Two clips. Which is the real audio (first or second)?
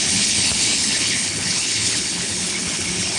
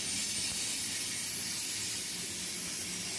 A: second